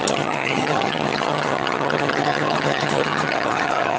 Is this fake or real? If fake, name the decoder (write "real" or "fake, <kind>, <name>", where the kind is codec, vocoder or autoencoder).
fake, vocoder, HiFi-GAN